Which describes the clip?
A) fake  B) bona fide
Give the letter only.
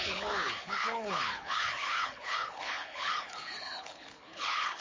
A